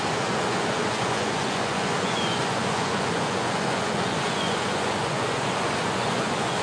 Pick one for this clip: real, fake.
fake